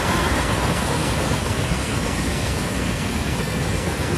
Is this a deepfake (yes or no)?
yes